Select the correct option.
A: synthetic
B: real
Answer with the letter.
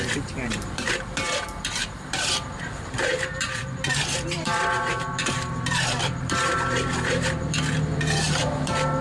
A